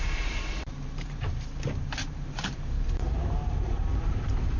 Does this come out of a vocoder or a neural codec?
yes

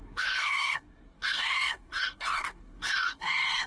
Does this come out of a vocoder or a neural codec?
yes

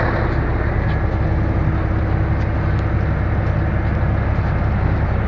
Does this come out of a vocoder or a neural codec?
no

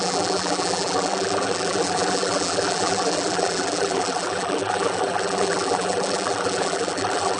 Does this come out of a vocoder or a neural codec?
yes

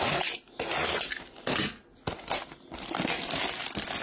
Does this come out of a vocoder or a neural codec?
no